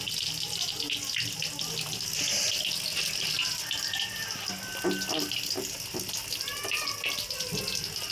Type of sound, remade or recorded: recorded